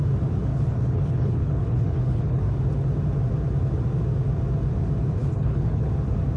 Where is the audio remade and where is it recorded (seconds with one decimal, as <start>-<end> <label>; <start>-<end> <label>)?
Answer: 0.0-0.5 recorded; 0.5-2.4 remade; 2.4-5.2 recorded; 5.2-5.9 remade; 5.9-6.4 recorded